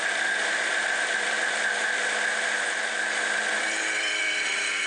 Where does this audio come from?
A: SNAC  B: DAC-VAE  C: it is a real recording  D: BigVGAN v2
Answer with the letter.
D